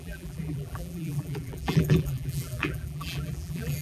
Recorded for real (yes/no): no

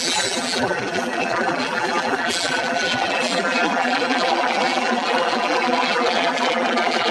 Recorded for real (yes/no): no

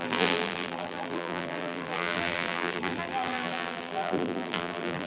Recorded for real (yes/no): no